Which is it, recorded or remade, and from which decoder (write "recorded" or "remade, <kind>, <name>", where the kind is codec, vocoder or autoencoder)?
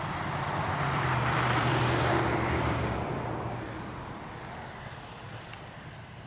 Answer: remade, vocoder, BigVGAN v2